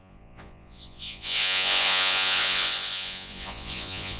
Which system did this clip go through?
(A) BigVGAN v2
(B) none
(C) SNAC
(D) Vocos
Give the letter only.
D